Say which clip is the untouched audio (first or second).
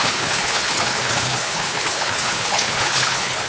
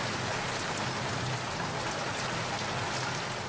second